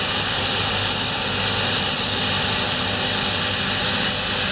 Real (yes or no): yes